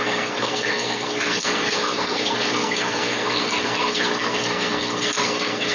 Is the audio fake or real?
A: fake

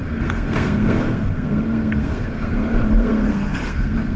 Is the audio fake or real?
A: fake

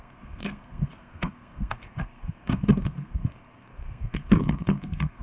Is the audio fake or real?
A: fake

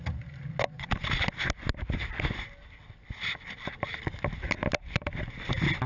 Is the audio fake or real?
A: real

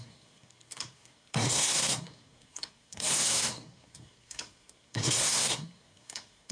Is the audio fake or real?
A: fake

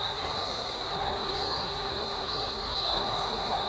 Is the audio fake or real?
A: fake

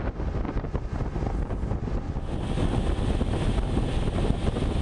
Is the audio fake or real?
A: real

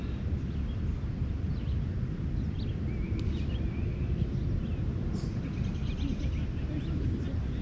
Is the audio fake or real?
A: real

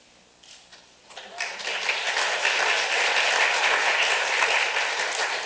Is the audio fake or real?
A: real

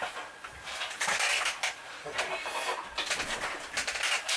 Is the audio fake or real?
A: real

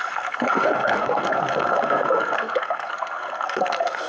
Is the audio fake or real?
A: fake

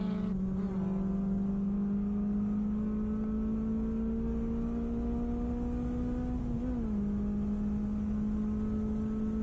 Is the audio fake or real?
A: real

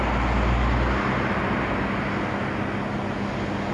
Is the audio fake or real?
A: real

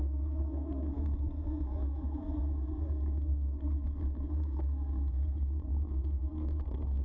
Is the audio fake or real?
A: fake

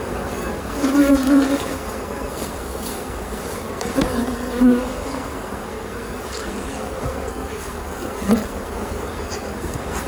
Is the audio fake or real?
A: fake